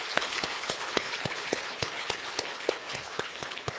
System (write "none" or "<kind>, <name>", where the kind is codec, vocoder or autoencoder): codec, HILCodec